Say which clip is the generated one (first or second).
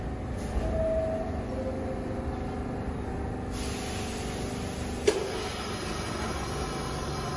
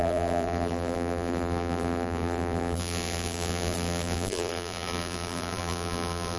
second